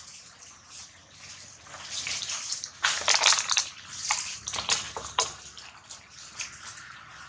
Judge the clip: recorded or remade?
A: recorded